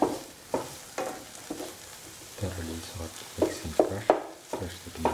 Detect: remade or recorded recorded